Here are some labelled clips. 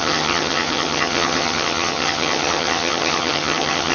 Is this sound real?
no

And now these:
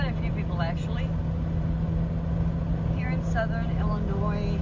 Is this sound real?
yes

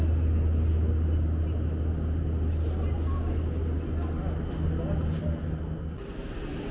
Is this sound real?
yes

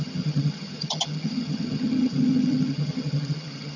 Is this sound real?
no